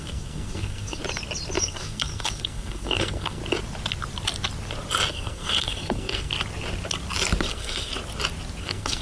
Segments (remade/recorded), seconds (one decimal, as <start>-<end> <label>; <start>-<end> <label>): 0.0-1.0 remade; 1.0-1.6 recorded; 1.6-3.4 remade; 3.4-5.1 recorded; 5.1-6.3 remade; 6.3-7.5 recorded; 7.5-7.9 remade; 7.9-8.6 recorded; 8.6-9.0 remade